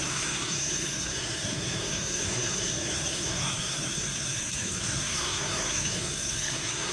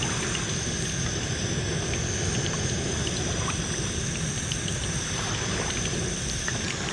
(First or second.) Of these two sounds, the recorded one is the second